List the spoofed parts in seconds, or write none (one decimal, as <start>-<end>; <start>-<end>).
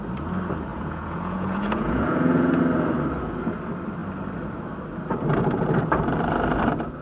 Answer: 0.7-2.6